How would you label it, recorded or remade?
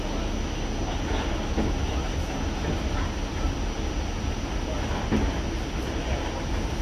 recorded